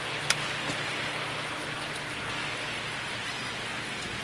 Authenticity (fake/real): real